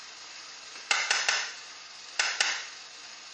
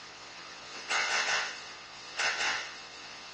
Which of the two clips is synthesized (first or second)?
second